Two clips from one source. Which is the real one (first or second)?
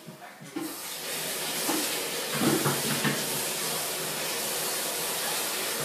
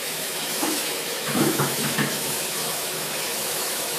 first